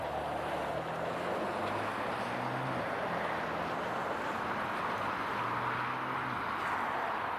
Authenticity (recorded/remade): recorded